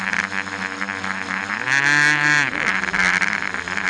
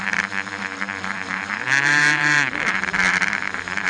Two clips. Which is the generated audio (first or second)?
second